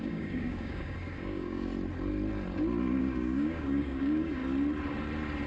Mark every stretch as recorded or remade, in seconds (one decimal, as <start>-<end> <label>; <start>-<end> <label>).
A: 0.0-1.7 remade; 1.7-3.0 recorded; 3.0-4.4 remade; 4.4-5.5 recorded